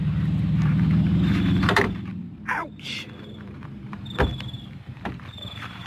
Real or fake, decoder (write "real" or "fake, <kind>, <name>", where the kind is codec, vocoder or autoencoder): fake, vocoder, BigVGAN v2